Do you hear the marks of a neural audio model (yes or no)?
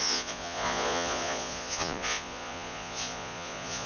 yes